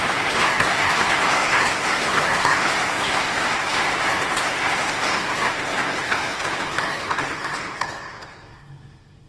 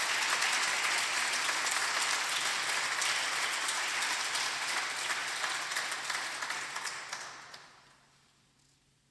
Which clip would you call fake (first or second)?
first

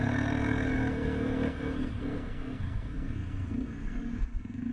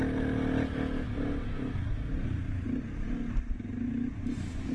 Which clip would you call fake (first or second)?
first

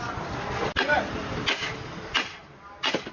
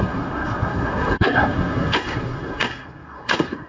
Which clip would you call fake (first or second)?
second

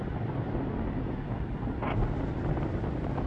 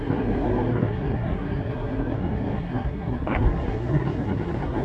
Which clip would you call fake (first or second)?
second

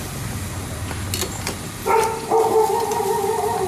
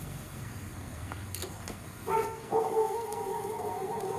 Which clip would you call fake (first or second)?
second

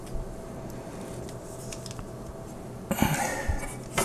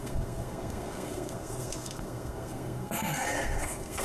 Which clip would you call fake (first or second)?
second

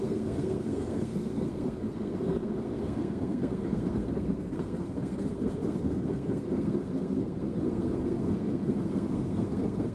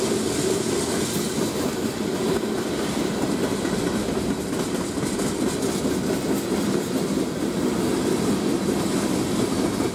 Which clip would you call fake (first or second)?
first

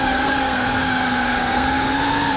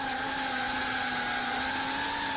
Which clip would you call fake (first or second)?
first